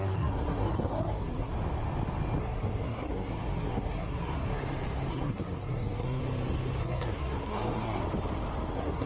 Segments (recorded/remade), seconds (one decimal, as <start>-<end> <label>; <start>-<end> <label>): 0.0-1.5 remade; 1.5-2.4 recorded; 2.4-4.6 remade; 4.6-5.1 recorded; 5.1-6.2 remade; 6.2-6.8 recorded; 6.8-8.0 remade; 8.0-8.7 recorded; 8.7-9.1 remade